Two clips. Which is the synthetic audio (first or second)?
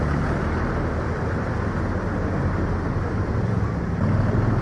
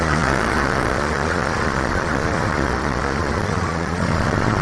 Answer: second